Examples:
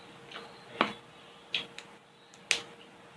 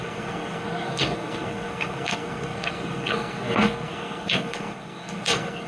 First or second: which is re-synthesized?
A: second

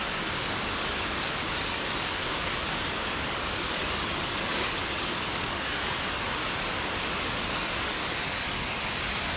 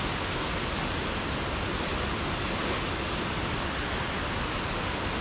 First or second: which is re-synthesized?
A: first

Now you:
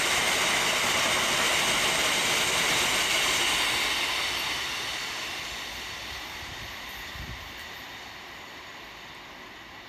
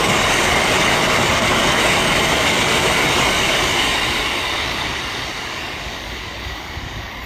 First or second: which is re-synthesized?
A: second